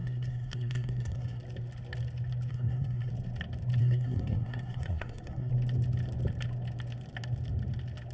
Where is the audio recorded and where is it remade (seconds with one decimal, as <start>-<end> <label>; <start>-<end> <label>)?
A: 0.0-1.4 remade; 1.4-2.5 recorded; 2.5-3.1 remade; 3.1-3.8 recorded; 3.8-5.5 remade; 5.5-8.1 recorded